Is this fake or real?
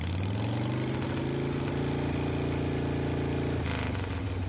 real